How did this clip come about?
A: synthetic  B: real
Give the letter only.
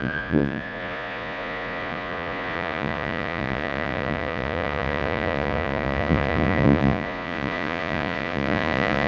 A